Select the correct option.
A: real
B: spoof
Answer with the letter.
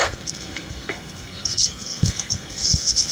B